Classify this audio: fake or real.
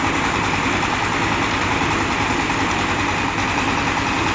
real